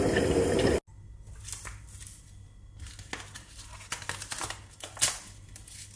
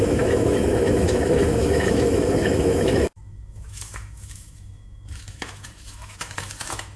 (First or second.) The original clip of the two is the first